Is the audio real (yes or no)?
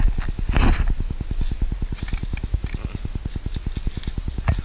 yes